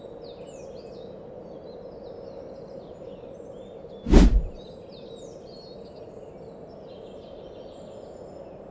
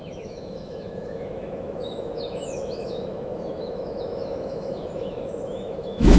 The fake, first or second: second